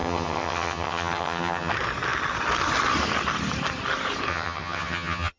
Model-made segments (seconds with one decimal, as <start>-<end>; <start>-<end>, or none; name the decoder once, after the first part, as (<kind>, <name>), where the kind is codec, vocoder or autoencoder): 0.0-1.7 (vocoder, HiFi-GAN); 4.3-5.4